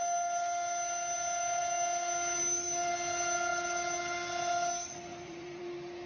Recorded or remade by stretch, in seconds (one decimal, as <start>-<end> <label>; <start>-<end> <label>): 0.0-5.1 recorded; 5.1-5.6 remade; 5.6-6.1 recorded